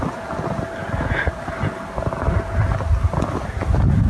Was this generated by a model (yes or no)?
no